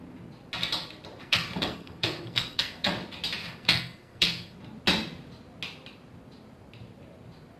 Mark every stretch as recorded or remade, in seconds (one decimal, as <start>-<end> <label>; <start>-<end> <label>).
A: 0.0-1.2 recorded; 1.2-2.9 remade; 2.9-3.4 recorded; 3.4-4.6 remade; 4.6-7.6 recorded